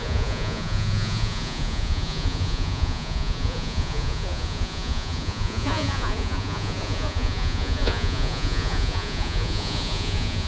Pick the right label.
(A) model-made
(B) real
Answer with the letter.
A